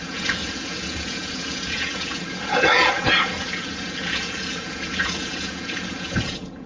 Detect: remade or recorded remade